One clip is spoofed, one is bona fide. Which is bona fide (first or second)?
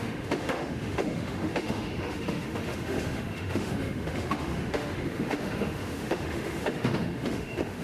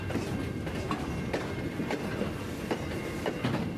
second